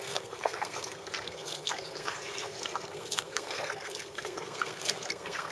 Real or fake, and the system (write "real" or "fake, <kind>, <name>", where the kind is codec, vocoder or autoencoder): fake, codec, SNAC